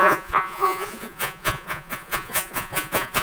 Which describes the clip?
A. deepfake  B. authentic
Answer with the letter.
A